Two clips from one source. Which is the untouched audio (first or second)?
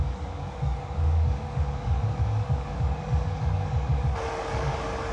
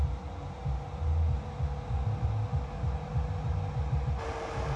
second